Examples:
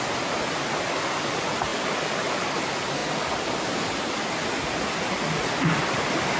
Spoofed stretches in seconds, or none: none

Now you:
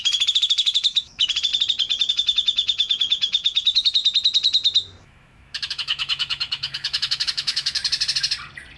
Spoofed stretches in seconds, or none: 0.0-1.5 (autoencoder, DAC-VAE); 2.1-4.0; 5.0-7.8

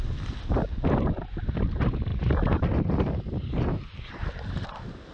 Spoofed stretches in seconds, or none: none

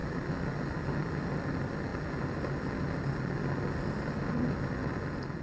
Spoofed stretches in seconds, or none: none

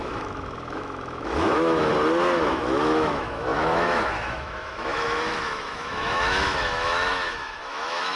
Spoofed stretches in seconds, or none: 0.0-1.9 (autoencoder, DAC-VAE); 2.5-8.2

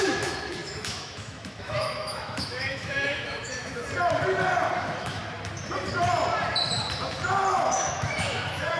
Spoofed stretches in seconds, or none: 0.0-3.8 (autoencoder, DAC-VAE); 4.8-5.2; 7.5-8.8

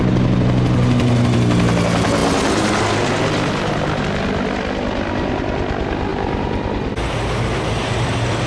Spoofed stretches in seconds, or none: none